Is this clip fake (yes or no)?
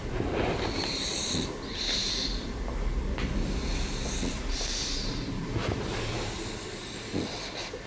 no